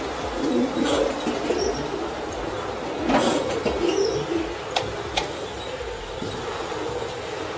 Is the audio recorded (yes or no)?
yes